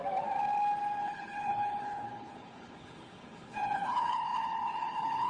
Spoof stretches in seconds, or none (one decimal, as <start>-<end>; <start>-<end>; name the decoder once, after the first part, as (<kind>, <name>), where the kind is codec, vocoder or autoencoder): 1.0-5.3 (codec, HILCodec)

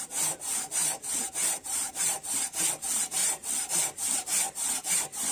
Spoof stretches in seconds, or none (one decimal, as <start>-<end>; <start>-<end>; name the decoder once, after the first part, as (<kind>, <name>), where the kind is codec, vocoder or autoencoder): 0.0-3.2 (vocoder, BigVGAN v2); 3.7-5.3

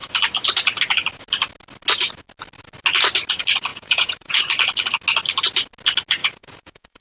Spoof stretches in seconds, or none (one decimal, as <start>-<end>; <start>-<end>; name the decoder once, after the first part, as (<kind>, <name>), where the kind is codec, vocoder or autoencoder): 3.7-4.4 (vocoder, Vocos); 6.2-7.0